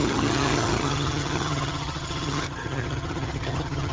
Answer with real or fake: fake